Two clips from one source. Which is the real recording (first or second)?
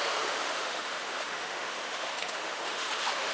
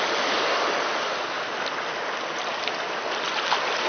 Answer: second